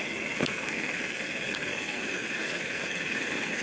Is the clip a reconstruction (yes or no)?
yes